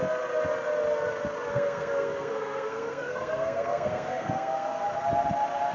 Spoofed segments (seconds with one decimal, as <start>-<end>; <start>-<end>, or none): 1.5-4.8

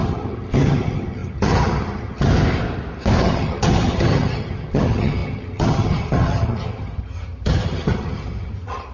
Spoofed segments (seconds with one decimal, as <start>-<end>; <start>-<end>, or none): 0.0-2.3; 3.2-8.9

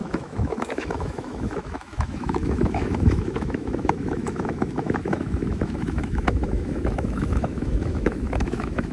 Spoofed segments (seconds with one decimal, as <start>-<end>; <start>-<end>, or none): 0.0-8.9

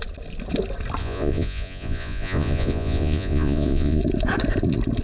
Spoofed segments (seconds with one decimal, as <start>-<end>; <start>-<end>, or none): 1.0-4.0